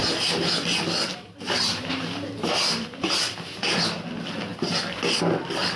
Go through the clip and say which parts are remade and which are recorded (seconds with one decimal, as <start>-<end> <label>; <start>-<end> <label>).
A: 0.0-1.1 recorded; 1.1-3.2 remade; 3.2-5.8 recorded